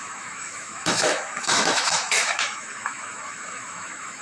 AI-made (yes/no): yes